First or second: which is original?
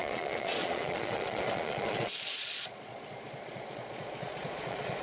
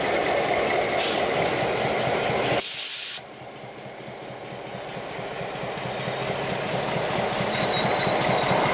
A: second